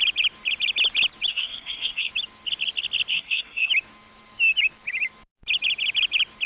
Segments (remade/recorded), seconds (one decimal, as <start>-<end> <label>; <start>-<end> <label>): 0.0-1.3 recorded; 1.3-2.1 remade; 2.1-3.1 recorded; 3.1-3.7 remade; 3.7-6.5 recorded